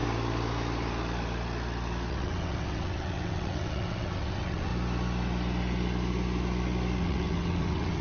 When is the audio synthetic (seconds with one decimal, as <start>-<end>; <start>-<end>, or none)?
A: 2.1-4.7; 7.0-8.0